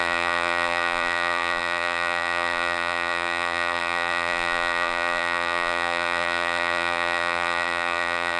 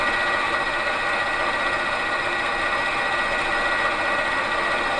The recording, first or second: second